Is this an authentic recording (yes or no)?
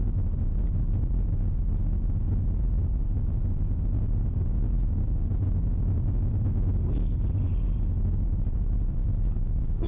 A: yes